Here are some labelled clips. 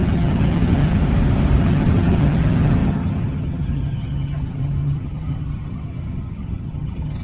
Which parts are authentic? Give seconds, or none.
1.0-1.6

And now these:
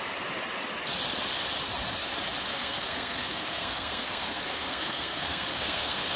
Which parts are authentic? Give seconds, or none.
0.0-2.5

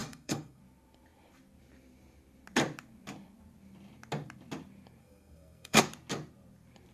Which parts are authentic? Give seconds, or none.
0.6-5.0; 5.8-6.9

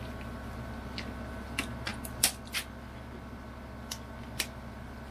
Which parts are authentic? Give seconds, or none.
0.0-5.1

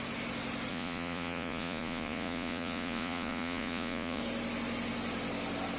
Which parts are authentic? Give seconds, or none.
0.0-0.7; 4.2-5.8